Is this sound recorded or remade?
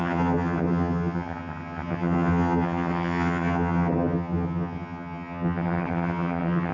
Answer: remade